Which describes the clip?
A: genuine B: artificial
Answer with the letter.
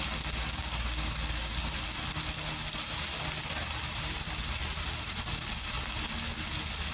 A